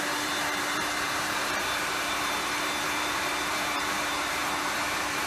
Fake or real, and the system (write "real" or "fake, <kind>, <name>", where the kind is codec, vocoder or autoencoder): fake, vocoder, BigVGAN v2